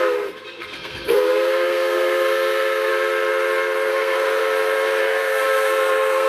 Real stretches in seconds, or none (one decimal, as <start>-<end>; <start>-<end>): 2.9-3.9; 4.4-5.0